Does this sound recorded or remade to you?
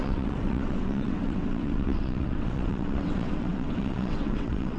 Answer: remade